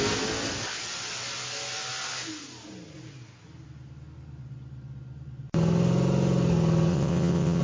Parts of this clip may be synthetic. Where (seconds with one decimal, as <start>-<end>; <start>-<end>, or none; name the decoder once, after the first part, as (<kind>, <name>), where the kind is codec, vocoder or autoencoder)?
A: 6.9-7.6 (vocoder, WaveNeXt)

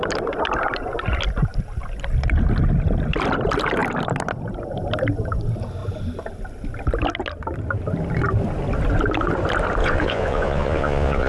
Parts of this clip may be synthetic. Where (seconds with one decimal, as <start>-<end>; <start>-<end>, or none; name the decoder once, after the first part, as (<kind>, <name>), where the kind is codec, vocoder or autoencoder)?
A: 9.8-11.3 (vocoder, Vocos)

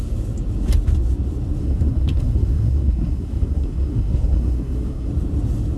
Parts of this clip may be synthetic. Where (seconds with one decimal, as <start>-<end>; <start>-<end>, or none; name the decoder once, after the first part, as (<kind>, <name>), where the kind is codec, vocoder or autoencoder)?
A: 1.6-5.1 (codec, SNAC)

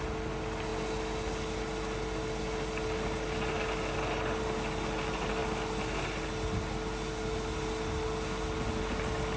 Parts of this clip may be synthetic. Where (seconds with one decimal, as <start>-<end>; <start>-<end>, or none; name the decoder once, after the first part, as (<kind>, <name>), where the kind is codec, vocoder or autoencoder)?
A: none

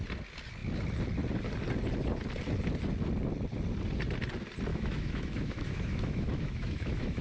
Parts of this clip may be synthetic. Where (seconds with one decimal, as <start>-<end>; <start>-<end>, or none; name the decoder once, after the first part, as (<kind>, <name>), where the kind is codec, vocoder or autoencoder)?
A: 4.7-7.2 (autoencoder, DAC-VAE)

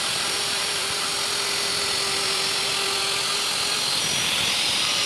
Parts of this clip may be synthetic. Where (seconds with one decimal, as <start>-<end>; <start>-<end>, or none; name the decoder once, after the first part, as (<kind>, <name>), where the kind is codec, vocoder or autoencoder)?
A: 0.0-1.1 (vocoder, BigVGAN v2); 4.2-5.1

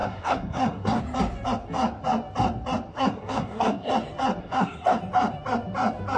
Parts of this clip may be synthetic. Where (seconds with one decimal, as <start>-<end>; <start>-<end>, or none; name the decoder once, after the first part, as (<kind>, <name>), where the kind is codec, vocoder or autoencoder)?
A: 0.0-1.0 (codec, SNAC); 2.9-3.9; 4.4-5.0

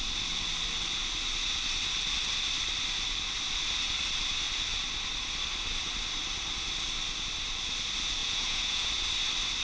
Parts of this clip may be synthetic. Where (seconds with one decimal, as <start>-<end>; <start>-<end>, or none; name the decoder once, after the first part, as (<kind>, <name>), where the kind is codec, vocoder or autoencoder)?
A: 8.2-8.9 (vocoder, Vocos)